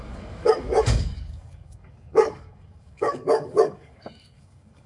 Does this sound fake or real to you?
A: fake